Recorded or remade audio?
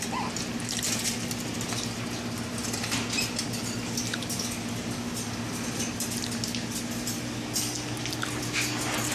recorded